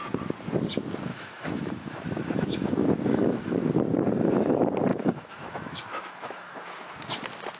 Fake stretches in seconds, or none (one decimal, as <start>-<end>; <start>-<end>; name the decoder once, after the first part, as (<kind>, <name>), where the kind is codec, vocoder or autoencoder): 1.1-3.5 (autoencoder, DAC-VAE); 4.9-6.9